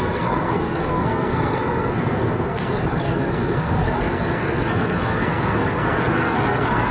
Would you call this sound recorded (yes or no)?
no